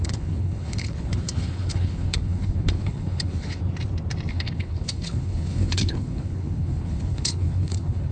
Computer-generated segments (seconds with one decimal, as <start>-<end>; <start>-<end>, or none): 0.0-3.6; 4.3-8.1

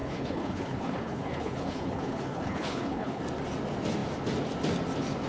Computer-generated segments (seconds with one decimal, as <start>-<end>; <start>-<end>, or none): 0.0-3.2

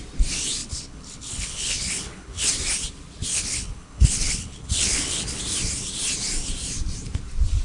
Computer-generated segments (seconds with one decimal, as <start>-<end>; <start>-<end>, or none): 0.6-2.5; 3.3-5.4

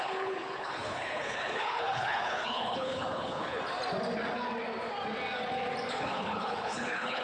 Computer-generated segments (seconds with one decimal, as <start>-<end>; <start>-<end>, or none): 0.0-3.6; 5.9-7.2

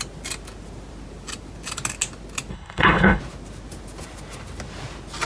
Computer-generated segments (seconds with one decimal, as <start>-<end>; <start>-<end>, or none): 2.5-3.2